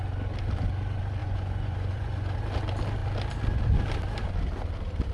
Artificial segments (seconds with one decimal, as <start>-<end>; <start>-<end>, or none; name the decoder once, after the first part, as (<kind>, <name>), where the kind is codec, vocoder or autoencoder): 1.2-2.4 (vocoder, Vocos)